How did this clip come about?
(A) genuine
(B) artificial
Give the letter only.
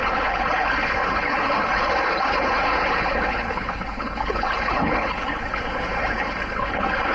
B